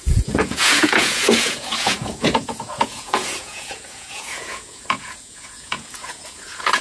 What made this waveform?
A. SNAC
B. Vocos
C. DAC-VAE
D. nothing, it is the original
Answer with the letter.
B